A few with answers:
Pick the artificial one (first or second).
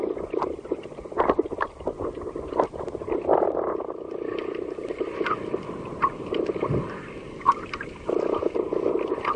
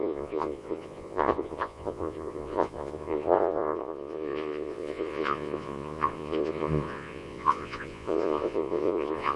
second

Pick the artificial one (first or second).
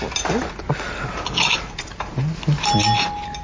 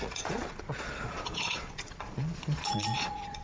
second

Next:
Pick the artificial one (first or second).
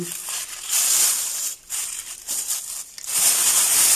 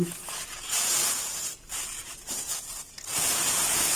second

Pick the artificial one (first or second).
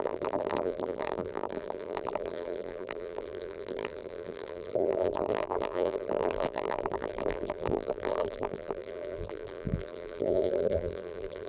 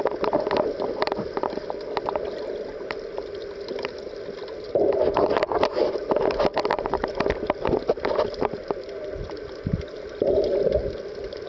first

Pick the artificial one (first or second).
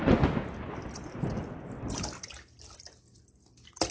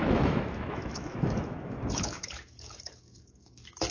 second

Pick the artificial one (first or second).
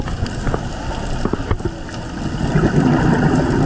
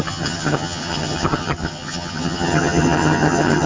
second